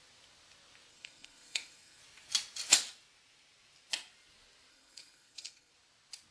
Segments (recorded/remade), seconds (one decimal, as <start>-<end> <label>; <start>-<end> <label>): 0.0-0.9 recorded; 0.9-2.0 remade; 2.0-4.7 recorded; 4.7-5.7 remade; 5.7-6.3 recorded